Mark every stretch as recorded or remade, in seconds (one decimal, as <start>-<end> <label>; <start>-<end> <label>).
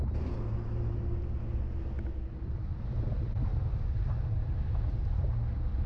0.0-2.7 recorded; 2.7-4.7 remade; 4.7-5.9 recorded